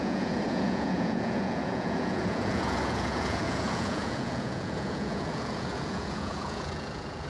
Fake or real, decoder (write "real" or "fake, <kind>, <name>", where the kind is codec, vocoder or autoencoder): fake, vocoder, Vocos